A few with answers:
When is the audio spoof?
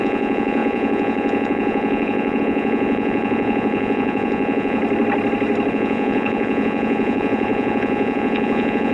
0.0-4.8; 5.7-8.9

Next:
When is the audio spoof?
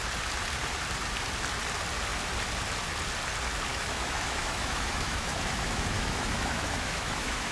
3.7-7.5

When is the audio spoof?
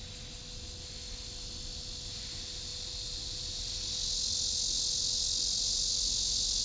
none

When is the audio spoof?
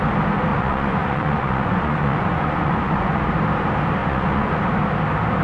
0.5-3.2; 4.0-4.6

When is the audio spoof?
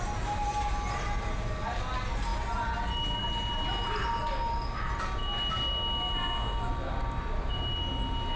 none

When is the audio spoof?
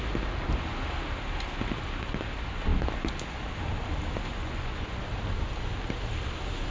4.3-5.1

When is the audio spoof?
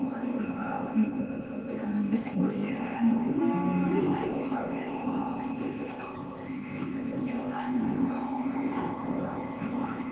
0.0-3.4; 4.0-10.1